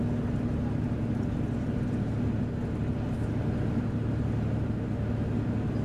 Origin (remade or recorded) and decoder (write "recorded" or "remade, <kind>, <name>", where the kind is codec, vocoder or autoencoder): recorded